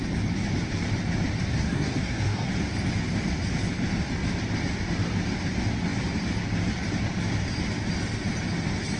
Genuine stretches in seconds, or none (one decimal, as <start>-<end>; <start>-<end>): 0.0-1.5; 2.5-9.0